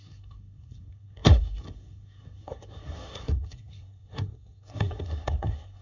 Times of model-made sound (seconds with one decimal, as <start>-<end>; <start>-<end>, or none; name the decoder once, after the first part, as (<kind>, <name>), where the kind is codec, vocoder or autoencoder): 0.0-5.8 (codec, SNAC)